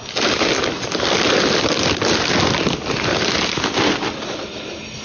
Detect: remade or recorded recorded